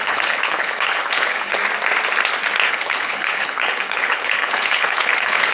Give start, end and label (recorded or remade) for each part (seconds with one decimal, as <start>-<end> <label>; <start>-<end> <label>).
0.0-1.6 remade; 1.6-2.7 recorded; 2.7-5.5 remade